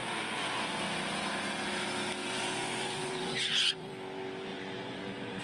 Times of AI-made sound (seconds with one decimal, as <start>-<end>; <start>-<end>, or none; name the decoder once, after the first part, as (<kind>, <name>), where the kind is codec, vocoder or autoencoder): 0.0-0.7 (vocoder, Vocos); 2.2-3.9; 4.5-5.4

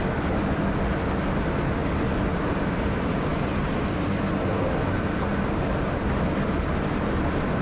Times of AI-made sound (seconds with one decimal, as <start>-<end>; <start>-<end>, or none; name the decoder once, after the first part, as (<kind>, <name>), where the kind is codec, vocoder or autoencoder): none

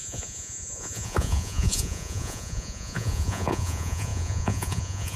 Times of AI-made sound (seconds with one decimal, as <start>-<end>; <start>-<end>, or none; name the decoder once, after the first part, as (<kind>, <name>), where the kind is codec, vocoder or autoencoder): 0.0-5.2 (vocoder, Vocos)

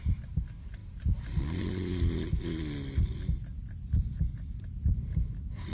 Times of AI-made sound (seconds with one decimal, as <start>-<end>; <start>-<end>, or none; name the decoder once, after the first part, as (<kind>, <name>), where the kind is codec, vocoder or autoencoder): none